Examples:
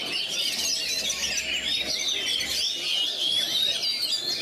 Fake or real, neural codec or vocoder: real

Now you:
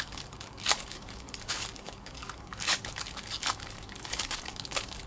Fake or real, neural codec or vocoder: fake, codec, DAC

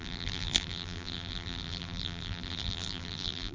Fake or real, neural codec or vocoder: fake, vocoder, BigVGAN v2